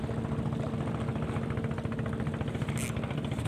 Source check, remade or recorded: recorded